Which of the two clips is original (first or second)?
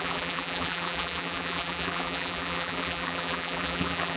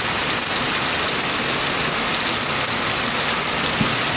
second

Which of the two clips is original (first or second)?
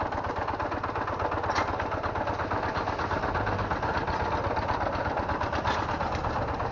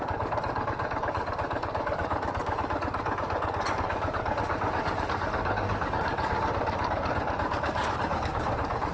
first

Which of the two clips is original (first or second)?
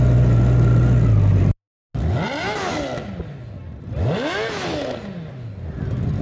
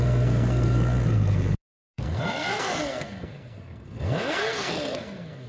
first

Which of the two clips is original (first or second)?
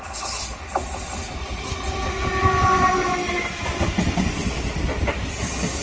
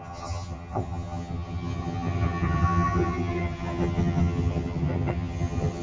first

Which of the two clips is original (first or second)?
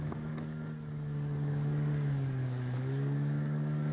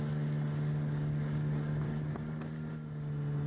second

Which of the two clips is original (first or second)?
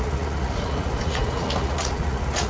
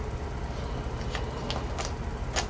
second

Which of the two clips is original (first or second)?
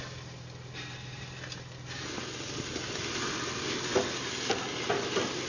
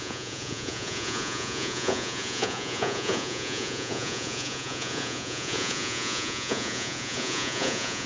first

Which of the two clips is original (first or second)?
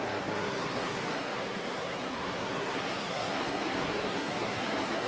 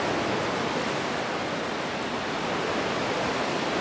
second